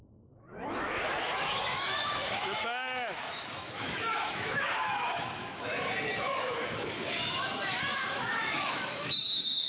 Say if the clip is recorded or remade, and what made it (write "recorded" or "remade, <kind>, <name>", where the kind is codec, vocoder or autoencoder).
remade, autoencoder, DAC-VAE